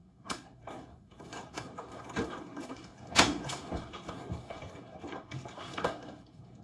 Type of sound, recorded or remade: remade